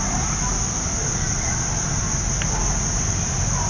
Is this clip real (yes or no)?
yes